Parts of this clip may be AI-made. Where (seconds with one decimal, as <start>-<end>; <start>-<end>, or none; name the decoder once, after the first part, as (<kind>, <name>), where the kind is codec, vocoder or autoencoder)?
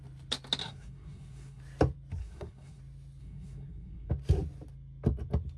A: 0.6-1.6 (codec, SNAC); 2.2-2.8; 3.2-4.1